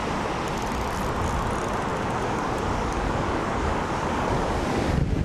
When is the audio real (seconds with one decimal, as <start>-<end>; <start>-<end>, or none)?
0.0-1.9